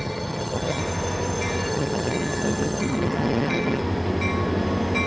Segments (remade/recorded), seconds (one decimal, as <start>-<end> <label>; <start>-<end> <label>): 0.0-0.8 remade; 0.8-1.7 recorded; 1.7-3.8 remade; 3.8-5.1 recorded